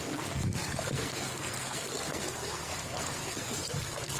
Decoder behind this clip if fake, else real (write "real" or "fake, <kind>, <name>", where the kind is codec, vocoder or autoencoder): fake, codec, SNAC